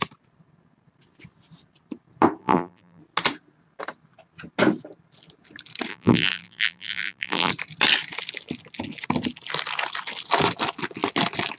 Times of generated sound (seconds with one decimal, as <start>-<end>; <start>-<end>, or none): 2.4-3.0; 5.9-7.5